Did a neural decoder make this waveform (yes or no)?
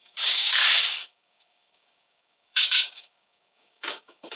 yes